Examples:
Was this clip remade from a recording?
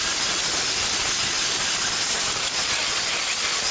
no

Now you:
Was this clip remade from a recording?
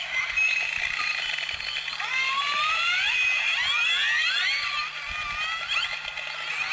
no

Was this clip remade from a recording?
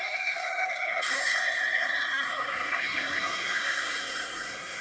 yes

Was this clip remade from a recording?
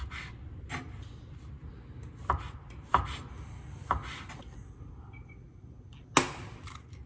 no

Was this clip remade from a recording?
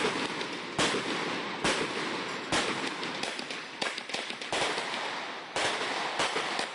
no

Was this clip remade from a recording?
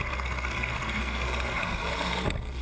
yes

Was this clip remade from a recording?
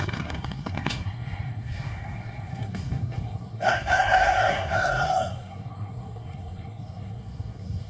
yes